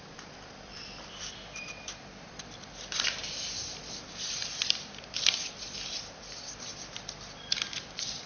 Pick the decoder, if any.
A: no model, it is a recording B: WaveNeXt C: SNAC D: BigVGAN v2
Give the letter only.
D